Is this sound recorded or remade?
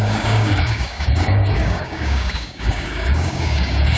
remade